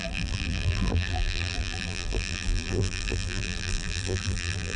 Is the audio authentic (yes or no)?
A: no